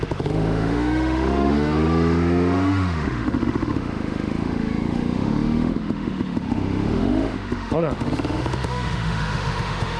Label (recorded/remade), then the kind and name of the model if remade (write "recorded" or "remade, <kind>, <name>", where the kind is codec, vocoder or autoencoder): remade, autoencoder, DAC-VAE